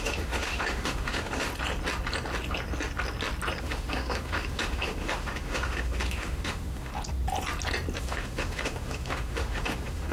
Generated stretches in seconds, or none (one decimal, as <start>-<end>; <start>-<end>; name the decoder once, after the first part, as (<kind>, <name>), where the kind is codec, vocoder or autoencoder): 0.0-1.5 (autoencoder, DAC-VAE); 3.6-6.9; 8.0-10.1